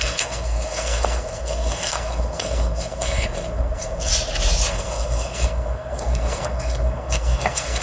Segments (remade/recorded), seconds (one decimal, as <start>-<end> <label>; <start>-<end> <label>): 0.0-4.1 remade; 4.1-4.7 recorded; 4.7-7.8 remade